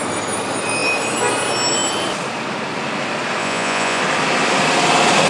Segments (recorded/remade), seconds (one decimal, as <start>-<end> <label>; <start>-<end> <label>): 0.0-3.4 recorded; 3.4-4.0 remade; 4.0-5.3 recorded